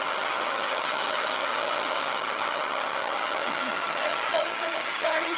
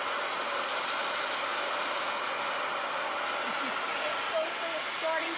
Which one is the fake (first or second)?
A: first